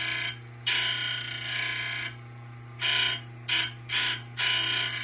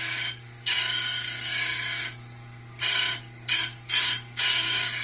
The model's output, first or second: second